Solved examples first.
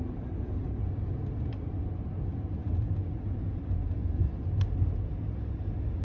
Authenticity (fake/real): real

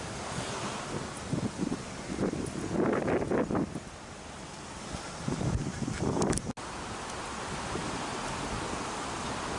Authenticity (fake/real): real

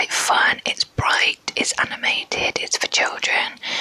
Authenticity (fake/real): real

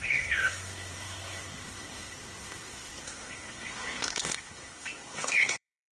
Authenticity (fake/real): fake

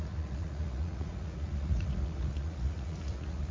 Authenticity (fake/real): fake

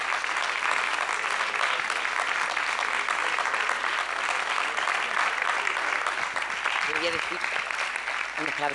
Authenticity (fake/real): real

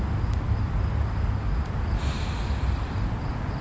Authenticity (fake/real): real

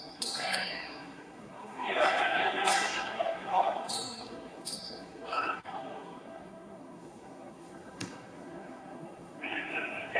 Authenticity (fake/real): fake